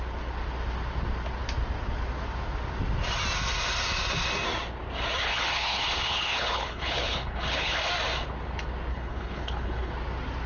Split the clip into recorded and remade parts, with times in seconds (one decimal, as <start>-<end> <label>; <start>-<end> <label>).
0.0-5.2 recorded; 5.2-7.9 remade; 7.9-8.9 recorded; 8.9-9.9 remade; 9.9-10.5 recorded